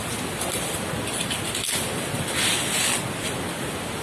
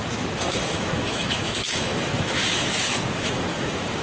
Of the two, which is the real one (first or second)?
first